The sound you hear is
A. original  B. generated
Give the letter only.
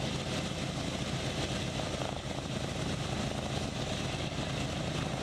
A